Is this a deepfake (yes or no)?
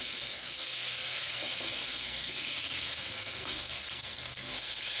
yes